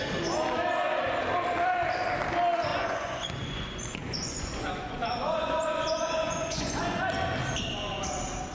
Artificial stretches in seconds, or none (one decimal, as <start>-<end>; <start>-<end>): 2.7-7.0